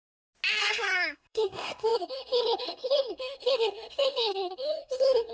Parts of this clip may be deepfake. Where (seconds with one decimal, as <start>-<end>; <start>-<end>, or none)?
0.6-5.3